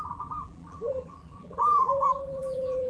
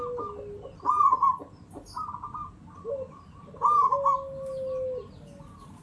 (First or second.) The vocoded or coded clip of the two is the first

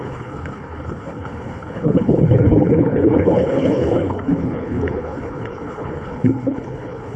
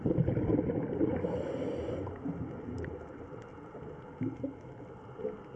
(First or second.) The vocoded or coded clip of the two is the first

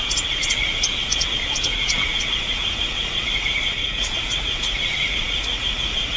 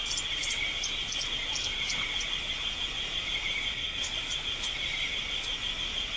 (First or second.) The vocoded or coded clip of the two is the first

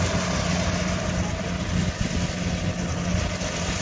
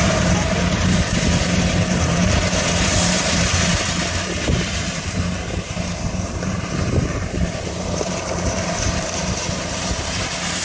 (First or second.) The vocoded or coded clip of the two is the second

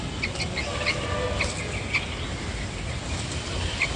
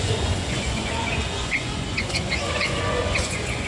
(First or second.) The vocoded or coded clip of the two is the second